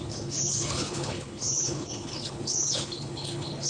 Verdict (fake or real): fake